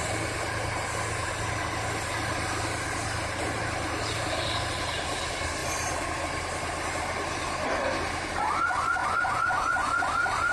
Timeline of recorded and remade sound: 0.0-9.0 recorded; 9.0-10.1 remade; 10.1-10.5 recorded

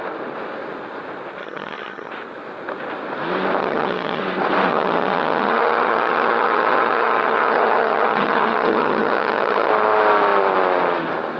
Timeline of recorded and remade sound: 0.0-1.4 recorded; 1.4-2.1 remade; 2.1-3.6 recorded; 3.6-4.2 remade; 4.2-4.7 recorded; 4.7-9.7 remade; 9.7-11.4 recorded

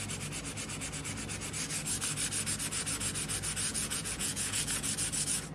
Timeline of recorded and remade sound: 0.0-3.7 recorded; 3.7-4.9 remade; 4.9-5.5 recorded

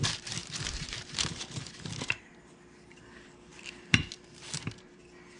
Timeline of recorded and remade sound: 0.0-0.4 recorded; 0.4-2.3 remade; 2.3-3.5 recorded; 3.5-5.0 remade; 5.0-5.4 recorded

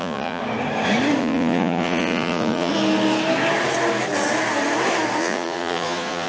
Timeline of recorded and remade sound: 0.0-0.4 remade; 0.4-1.2 recorded; 1.2-2.7 remade; 2.7-5.2 recorded; 5.2-6.3 remade

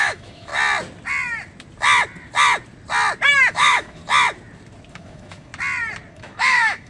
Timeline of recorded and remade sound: 0.0-0.5 remade; 0.5-3.5 recorded; 3.5-4.0 remade; 4.0-4.9 recorded; 4.9-5.5 remade; 5.5-6.1 recorded; 6.1-6.9 remade

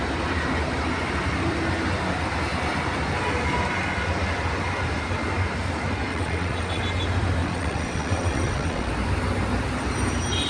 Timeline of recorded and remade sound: 0.0-6.1 recorded; 6.1-6.8 remade; 6.8-7.4 recorded; 7.4-8.9 remade; 8.9-10.5 recorded